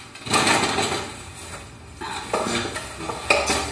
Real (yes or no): yes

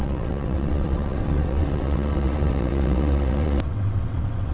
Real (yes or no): no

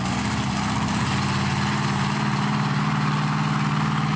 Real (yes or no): yes